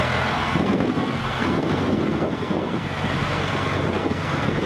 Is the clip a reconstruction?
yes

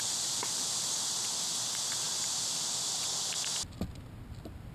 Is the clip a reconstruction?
no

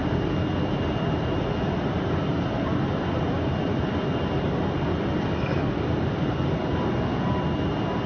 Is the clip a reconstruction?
no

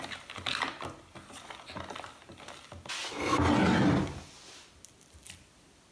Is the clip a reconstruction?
no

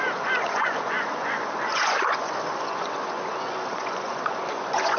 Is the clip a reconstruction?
yes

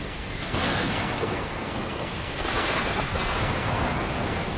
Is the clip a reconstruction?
yes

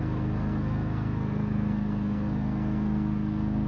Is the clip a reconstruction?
yes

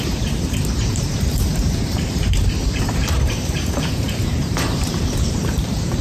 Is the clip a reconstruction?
yes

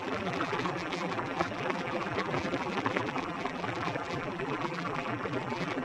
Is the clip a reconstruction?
yes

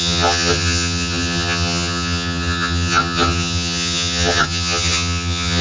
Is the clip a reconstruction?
yes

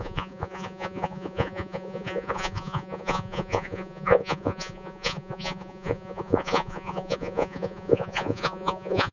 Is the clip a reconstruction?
yes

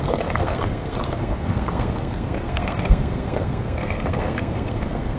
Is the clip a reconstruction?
yes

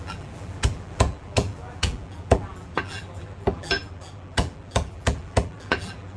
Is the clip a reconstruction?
yes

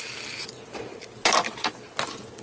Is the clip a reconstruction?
no